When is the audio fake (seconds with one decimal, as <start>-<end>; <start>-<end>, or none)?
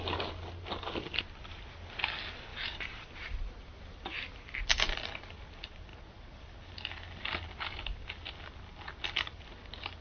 2.5-3.6